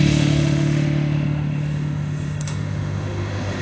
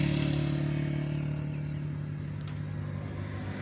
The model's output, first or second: first